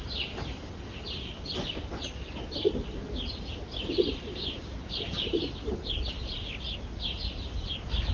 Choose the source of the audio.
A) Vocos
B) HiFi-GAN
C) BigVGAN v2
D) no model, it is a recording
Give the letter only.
D